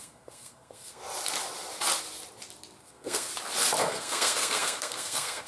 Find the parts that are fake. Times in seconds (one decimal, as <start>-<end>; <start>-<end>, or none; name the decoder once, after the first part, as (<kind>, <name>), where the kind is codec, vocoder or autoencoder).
0.0-1.0 (codec, SNAC); 2.8-3.3; 3.8-5.5